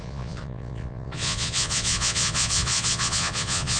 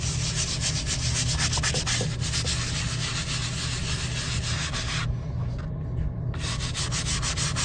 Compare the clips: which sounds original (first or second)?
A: second